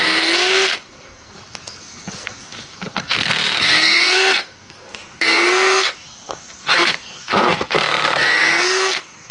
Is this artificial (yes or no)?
yes